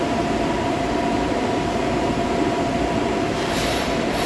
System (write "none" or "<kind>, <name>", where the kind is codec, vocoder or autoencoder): vocoder, BigVGAN v2